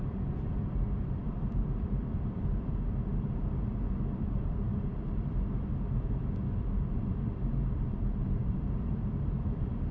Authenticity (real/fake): fake